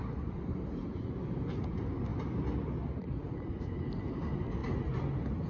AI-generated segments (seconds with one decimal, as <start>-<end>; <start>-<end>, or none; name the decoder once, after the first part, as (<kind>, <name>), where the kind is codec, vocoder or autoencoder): none